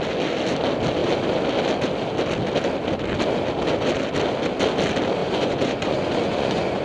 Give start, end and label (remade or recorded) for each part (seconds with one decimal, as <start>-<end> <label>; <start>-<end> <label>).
0.0-5.2 recorded; 5.2-6.8 remade